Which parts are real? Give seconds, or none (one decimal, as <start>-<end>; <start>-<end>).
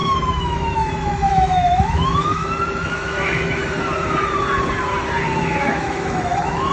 3.6-5.4